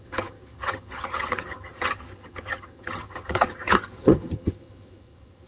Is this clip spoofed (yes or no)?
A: yes